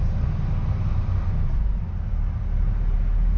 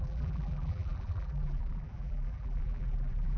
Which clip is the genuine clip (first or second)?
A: first